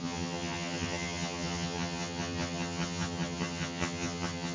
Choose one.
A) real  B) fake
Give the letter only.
B